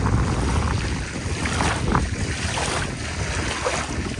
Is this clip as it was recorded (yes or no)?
yes